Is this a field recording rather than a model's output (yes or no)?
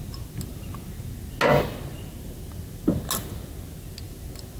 yes